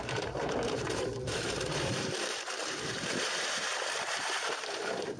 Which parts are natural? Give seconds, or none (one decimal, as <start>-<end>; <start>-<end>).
none